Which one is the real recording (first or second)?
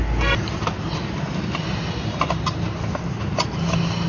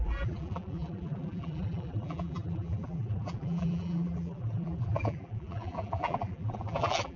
first